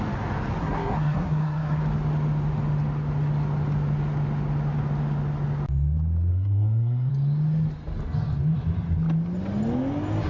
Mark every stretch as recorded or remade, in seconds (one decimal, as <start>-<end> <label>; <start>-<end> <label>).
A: 0.0-0.6 recorded; 0.6-1.8 remade; 1.8-6.3 recorded; 6.3-7.1 remade; 7.1-10.3 recorded